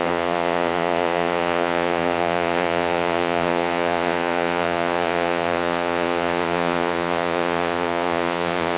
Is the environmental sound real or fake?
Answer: fake